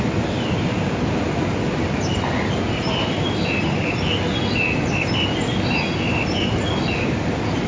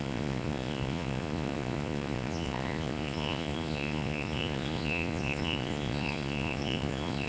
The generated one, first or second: second